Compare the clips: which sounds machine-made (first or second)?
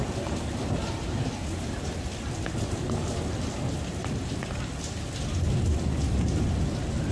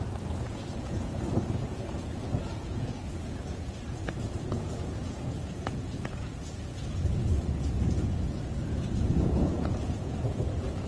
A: second